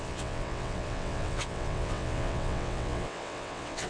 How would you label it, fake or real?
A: fake